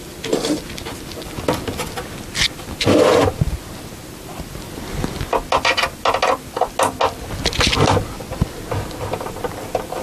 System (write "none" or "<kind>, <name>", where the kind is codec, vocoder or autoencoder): none